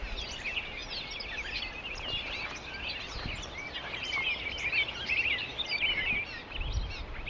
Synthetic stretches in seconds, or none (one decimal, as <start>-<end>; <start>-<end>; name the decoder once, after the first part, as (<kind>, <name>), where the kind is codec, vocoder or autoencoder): none